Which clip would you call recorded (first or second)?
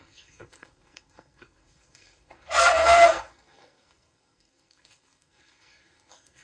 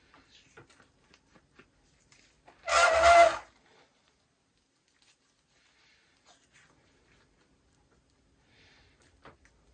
second